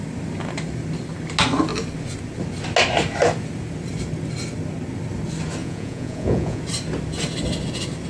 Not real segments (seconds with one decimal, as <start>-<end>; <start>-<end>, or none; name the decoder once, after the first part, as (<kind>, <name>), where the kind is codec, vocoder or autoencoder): 5.6-6.6 (vocoder, Vocos)